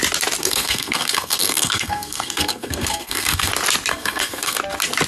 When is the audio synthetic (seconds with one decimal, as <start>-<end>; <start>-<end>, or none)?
0.4-3.5; 3.9-4.6